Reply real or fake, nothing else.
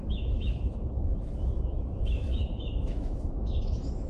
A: fake